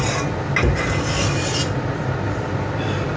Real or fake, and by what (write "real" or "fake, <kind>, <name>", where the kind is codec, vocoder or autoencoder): real